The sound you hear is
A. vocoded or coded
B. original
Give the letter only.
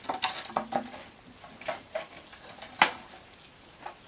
B